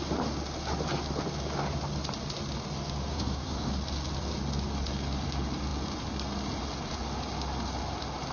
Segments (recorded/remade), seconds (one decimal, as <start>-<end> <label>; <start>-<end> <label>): 0.0-3.1 recorded; 3.1-3.7 remade; 3.7-8.3 recorded